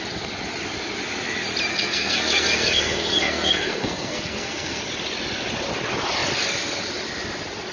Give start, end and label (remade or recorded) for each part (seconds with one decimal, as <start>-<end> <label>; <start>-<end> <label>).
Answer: 0.0-1.7 recorded; 1.7-4.8 remade; 4.8-7.7 recorded